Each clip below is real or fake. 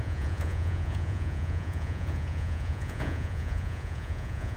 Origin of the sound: fake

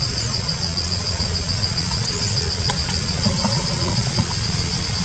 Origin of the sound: fake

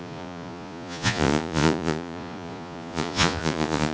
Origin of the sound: fake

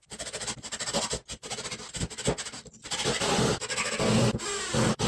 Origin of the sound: real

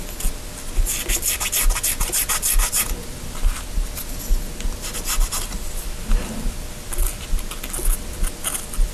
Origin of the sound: real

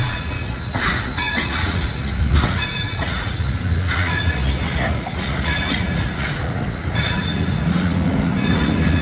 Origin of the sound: fake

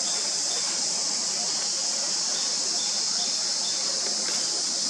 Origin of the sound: real